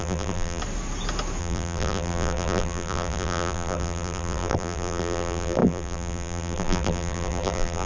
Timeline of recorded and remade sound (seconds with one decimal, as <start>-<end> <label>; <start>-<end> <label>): 0.0-0.6 remade; 0.6-1.4 recorded; 1.4-7.9 remade